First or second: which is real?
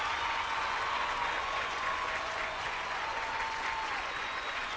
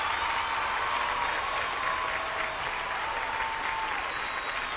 second